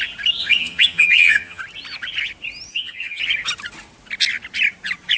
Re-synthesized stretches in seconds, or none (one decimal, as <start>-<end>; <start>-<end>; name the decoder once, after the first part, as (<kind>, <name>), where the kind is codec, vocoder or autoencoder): 0.4-1.6 (vocoder, HiFi-GAN); 2.7-3.2